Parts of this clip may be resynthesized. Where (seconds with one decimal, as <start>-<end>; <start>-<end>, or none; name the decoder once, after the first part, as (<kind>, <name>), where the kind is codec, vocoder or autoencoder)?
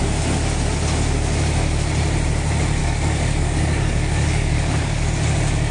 2.8-5.1 (codec, DAC)